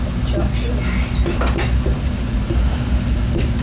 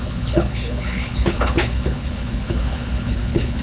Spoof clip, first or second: second